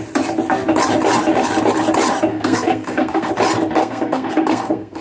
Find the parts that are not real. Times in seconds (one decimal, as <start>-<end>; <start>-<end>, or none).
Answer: 2.3-3.3; 3.8-5.0